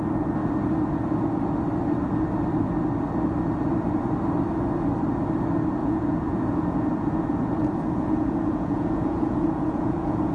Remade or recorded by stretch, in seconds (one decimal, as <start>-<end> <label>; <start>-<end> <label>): 0.0-5.8 recorded; 5.8-10.3 remade